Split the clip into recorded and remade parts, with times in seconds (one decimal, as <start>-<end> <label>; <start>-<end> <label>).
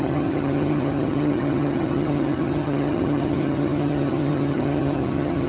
0.0-5.5 remade